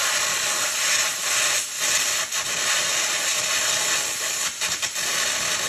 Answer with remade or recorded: recorded